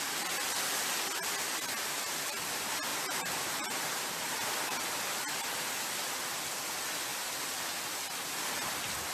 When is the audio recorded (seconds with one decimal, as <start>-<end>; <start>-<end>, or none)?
0.0-2.9; 4.5-7.1; 7.6-9.1